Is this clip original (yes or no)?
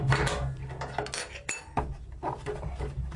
yes